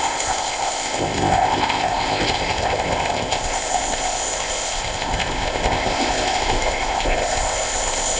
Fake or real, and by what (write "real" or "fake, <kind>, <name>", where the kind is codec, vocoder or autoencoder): fake, codec, ZipCodec